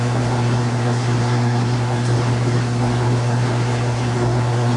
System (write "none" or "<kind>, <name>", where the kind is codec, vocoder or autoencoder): codec, SNAC